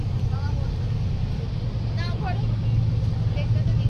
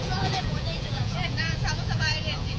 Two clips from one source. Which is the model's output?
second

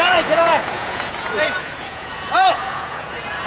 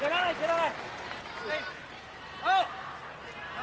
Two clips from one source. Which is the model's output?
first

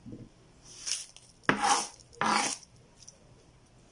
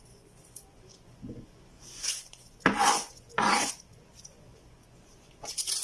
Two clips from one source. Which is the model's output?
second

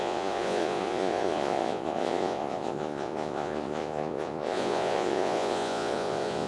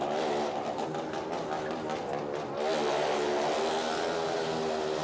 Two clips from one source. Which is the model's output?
first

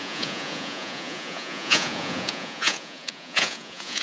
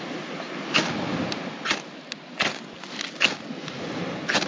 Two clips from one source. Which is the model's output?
first